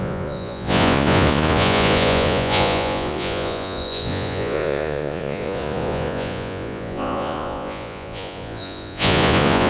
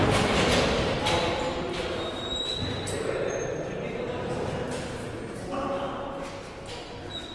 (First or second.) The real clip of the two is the second